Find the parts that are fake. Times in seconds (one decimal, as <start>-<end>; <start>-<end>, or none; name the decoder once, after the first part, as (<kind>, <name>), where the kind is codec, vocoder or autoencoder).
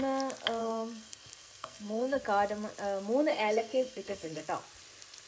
0.6-2.2 (codec, SNAC); 3.3-4.4